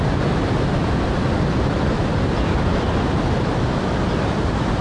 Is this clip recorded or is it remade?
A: recorded